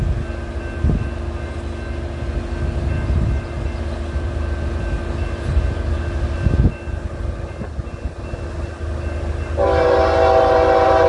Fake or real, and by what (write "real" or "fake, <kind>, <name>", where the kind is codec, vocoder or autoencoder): real